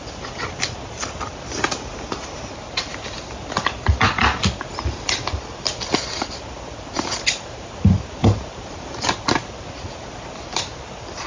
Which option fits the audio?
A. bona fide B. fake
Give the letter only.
A